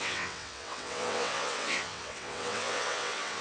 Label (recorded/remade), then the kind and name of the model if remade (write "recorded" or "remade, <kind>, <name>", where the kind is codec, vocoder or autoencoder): remade, vocoder, WaveNeXt